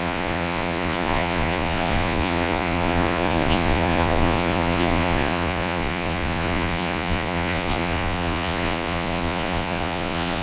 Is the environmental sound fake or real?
fake